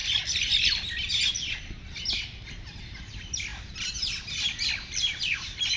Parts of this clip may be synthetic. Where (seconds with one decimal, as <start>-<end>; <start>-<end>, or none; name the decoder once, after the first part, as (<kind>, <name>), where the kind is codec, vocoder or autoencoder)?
none